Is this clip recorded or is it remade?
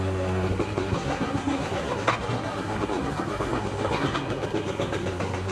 remade